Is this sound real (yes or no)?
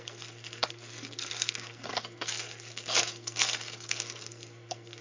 no